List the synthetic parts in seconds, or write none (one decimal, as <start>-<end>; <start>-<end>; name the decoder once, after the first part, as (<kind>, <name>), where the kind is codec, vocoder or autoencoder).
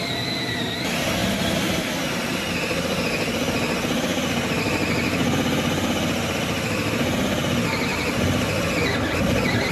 7.9-8.7 (vocoder, BigVGAN v2)